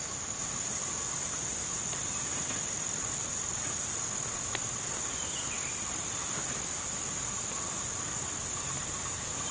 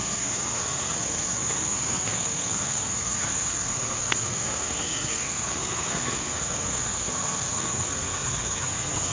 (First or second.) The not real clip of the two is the second